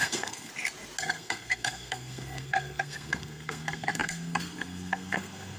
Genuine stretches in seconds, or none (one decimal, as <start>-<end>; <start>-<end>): 0.5-1.0